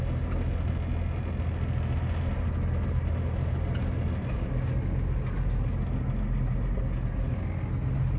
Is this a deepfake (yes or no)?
no